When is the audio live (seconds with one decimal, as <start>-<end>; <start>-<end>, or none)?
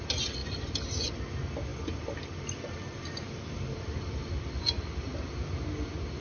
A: 0.0-0.4; 1.1-1.7; 4.3-6.2